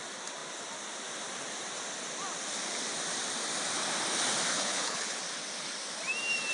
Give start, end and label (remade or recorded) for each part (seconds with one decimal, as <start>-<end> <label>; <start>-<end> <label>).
0.0-4.5 recorded; 4.5-5.2 remade; 5.2-6.5 recorded